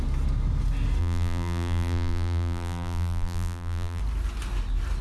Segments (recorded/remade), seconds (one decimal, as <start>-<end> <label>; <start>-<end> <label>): 0.0-1.0 recorded; 1.0-4.0 remade; 4.0-5.0 recorded